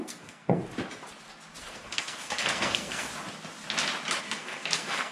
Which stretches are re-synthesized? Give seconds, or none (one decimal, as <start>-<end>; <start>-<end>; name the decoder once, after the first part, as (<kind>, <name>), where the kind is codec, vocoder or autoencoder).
0.0-0.6 (codec, SNAC); 1.6-3.1; 4.2-5.1